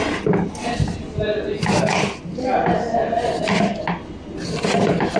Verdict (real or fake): real